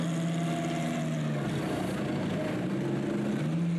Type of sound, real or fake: real